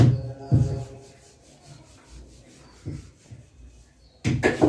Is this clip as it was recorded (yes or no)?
yes